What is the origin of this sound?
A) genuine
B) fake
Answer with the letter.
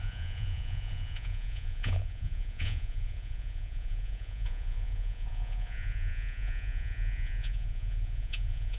B